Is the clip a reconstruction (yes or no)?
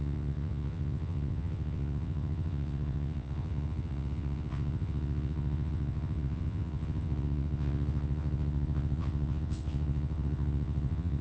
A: yes